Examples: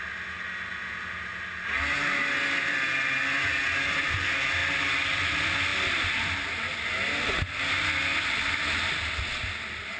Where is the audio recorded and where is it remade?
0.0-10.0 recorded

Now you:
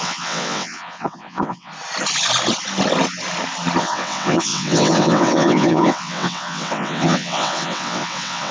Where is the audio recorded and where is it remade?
0.0-1.7 remade; 1.7-3.8 recorded; 3.8-8.5 remade

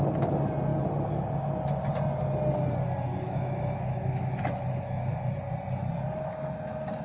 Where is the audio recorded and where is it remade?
0.0-3.1 recorded; 3.1-5.1 remade; 5.1-7.0 recorded